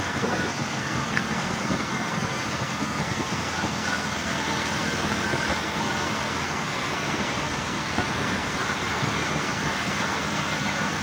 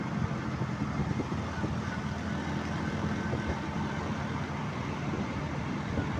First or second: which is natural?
second